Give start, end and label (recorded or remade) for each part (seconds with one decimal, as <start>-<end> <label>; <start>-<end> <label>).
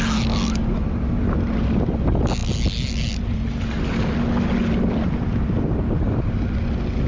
0.0-7.1 recorded